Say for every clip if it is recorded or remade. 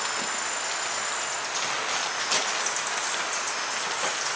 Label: recorded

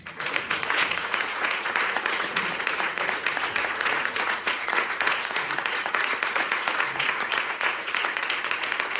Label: remade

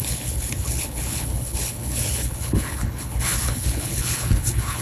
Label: remade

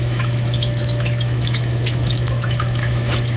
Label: remade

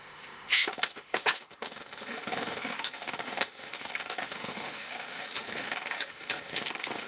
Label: remade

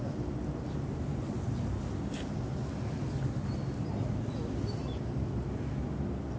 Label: recorded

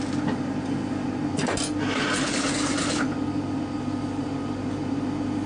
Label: recorded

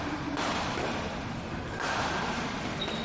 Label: recorded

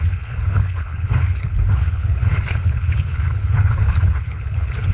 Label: remade